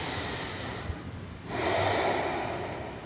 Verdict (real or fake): real